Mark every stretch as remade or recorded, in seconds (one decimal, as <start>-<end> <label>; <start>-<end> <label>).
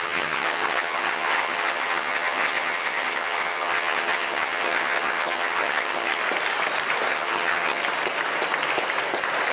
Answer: 0.0-6.2 remade; 6.2-7.1 recorded; 7.1-7.8 remade; 7.8-9.5 recorded